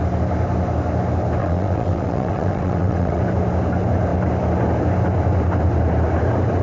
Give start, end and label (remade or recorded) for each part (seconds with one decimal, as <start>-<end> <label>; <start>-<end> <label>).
0.0-1.4 recorded; 1.4-3.2 remade; 3.2-6.6 recorded